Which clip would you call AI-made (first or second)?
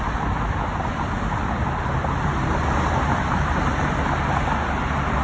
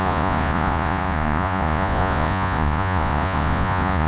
second